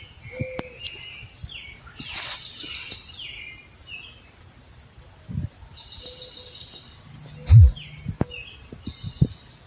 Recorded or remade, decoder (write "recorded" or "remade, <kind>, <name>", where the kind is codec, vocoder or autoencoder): recorded